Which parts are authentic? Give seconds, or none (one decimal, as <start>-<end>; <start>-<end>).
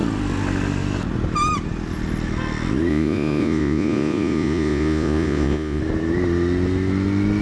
0.0-2.9; 5.8-7.4